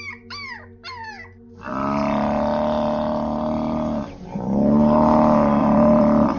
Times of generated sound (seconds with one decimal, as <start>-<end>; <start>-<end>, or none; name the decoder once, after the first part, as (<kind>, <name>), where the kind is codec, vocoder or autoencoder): 5.6-6.4 (vocoder, BigVGAN v2)